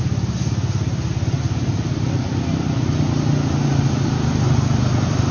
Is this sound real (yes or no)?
yes